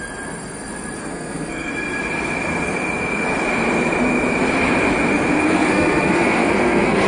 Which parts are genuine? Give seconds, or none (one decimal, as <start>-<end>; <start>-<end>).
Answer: 0.0-1.0; 1.7-5.4